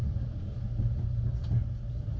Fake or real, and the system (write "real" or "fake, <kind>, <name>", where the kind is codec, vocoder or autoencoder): real